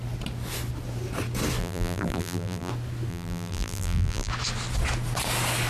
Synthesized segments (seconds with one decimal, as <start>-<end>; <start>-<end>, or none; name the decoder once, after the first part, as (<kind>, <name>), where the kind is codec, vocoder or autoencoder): 1.6-2.7 (vocoder, BigVGAN v2); 3.1-4.3